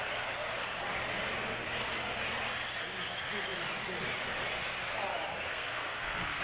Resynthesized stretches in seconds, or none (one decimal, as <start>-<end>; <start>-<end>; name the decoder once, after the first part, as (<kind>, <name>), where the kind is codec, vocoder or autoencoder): 5.3-6.4 (codec, SNAC)